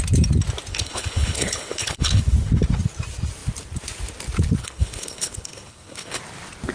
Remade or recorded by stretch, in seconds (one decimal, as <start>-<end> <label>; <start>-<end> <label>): 0.0-0.7 recorded; 0.7-2.2 remade; 2.2-4.6 recorded; 4.6-6.2 remade; 6.2-6.7 recorded